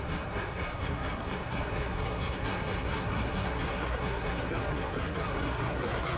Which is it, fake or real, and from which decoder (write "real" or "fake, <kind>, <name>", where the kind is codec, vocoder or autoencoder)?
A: fake, codec, SNAC